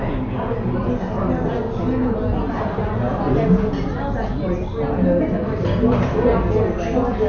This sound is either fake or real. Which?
real